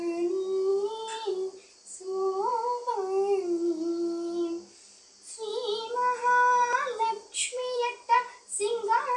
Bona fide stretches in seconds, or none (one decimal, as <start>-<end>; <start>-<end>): 0.0-0.7; 2.9-5.5